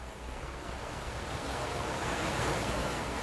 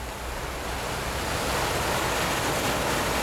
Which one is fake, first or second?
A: first